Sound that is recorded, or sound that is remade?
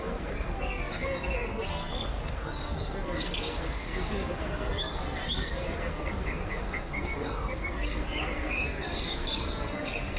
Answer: remade